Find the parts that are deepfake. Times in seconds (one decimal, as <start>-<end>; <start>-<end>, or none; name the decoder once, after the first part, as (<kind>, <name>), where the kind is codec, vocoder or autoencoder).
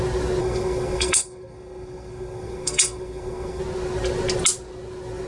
0.4-3.6 (codec, SNAC)